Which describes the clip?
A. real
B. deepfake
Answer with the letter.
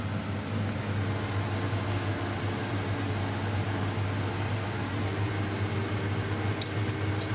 A